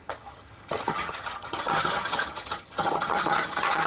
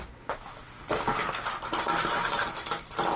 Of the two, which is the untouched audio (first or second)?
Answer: second